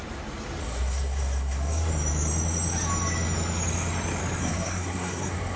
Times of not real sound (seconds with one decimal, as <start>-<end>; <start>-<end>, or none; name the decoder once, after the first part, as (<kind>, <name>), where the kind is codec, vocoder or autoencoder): 0.6-1.9 (codec, SNAC); 4.4-5.6